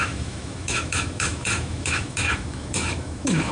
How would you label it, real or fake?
fake